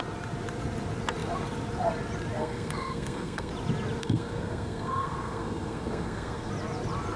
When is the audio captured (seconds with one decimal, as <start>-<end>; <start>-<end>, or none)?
0.0-2.4; 3.5-4.0; 6.5-7.2